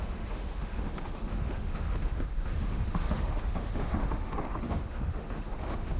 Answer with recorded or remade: remade